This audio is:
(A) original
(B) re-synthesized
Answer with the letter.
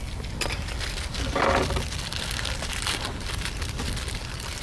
A